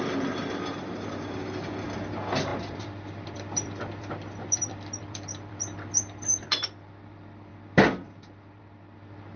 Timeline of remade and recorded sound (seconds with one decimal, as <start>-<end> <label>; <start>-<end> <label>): 0.0-2.5 recorded; 2.5-5.6 remade; 5.6-9.4 recorded